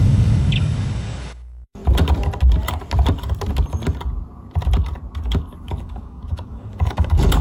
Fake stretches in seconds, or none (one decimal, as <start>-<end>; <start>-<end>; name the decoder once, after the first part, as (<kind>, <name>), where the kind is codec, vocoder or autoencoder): 0.0-1.8 (codec, DAC); 5.6-7.4